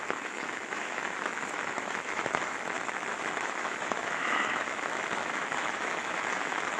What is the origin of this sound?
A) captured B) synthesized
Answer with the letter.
B